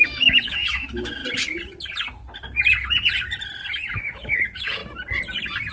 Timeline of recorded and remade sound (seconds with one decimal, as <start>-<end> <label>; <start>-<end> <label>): 0.0-1.2 remade; 1.2-3.9 recorded; 3.9-4.8 remade; 4.8-5.7 recorded